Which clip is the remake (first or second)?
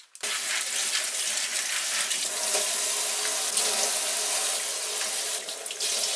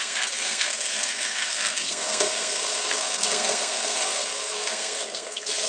second